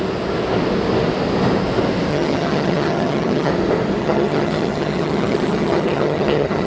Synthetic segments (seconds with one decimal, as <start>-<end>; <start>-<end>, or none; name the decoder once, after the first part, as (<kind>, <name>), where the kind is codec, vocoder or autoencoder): 2.1-3.5 (vocoder, HiFi-GAN); 4.0-6.7